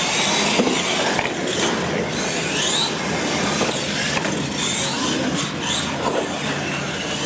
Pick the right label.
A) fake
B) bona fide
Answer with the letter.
B